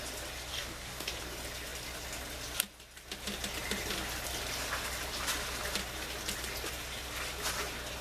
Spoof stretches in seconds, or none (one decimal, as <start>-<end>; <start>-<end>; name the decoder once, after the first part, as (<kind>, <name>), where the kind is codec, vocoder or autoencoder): 0.5-1.1 (codec, DAC)